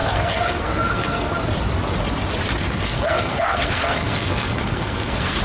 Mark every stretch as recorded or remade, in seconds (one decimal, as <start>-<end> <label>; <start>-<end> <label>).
0.0-1.3 remade; 1.3-2.6 recorded; 2.6-5.4 remade